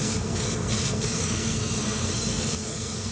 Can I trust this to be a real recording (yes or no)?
no